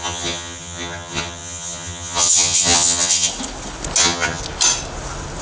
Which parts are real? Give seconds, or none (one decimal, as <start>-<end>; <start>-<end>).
3.3-4.0; 4.4-5.4